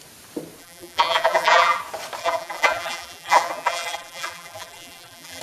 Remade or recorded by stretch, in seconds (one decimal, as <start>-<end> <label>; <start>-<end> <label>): 0.0-0.6 recorded; 0.6-1.8 remade; 1.8-2.2 recorded; 2.2-5.4 remade

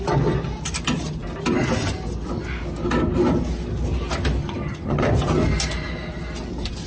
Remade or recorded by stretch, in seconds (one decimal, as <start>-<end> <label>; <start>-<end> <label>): 0.0-4.4 recorded; 4.4-5.0 remade; 5.0-6.9 recorded

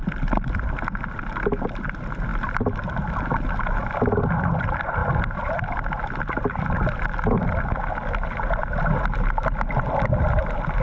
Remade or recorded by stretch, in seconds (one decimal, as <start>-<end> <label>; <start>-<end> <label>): 0.0-3.8 remade; 3.8-4.3 recorded; 4.3-5.0 remade; 5.0-9.9 recorded; 9.9-10.8 remade